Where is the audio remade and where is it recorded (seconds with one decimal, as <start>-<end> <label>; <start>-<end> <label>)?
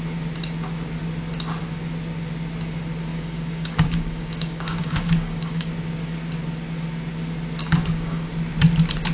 0.0-3.1 recorded; 3.1-5.7 remade; 5.7-7.6 recorded; 7.6-8.3 remade; 8.3-9.1 recorded